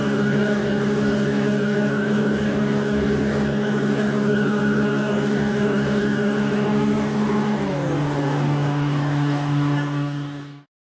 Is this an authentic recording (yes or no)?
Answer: no